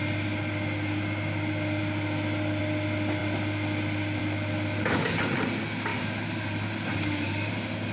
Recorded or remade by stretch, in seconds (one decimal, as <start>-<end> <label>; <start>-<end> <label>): 0.0-7.9 recorded